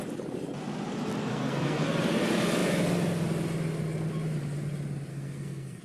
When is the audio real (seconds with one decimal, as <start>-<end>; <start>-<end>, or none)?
0.0-1.3; 1.9-5.1

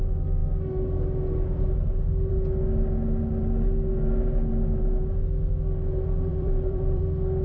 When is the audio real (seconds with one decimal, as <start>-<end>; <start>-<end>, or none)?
0.0-6.3; 7.0-7.4

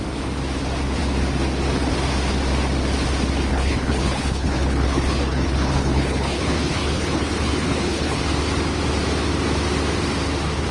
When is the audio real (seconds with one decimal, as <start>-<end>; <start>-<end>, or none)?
0.0-3.5; 8.2-10.7

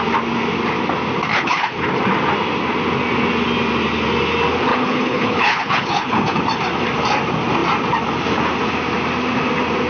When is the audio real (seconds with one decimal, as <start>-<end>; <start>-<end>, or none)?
0.0-1.3; 2.0-4.7; 6.4-9.9

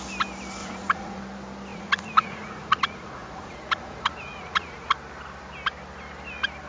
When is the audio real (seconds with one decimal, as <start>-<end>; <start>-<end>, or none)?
0.0-0.6; 1.2-1.7; 4.9-6.7

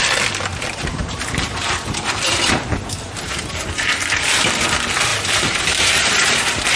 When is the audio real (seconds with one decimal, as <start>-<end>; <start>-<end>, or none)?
0.0-0.5; 4.5-5.1